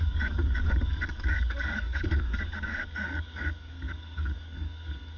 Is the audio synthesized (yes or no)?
yes